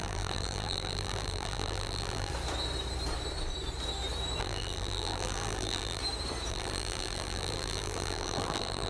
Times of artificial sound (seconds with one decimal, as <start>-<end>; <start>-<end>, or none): 0.0-2.3; 4.4-6.0; 6.5-8.9